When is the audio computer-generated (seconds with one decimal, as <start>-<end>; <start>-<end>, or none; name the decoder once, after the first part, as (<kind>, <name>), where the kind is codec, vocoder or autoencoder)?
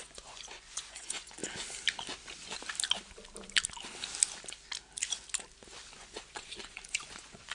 0.0-1.4 (vocoder, Vocos); 5.9-7.5